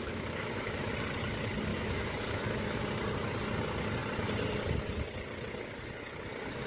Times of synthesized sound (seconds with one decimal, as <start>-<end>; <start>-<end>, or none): 0.0-0.9; 1.7-2.8